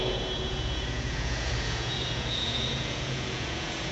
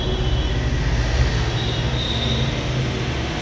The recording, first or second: second